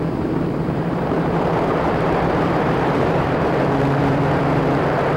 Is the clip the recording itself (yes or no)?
no